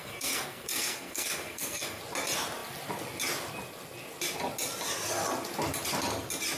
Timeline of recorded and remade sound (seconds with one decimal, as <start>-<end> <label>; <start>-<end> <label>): 0.0-2.0 remade; 2.0-6.6 recorded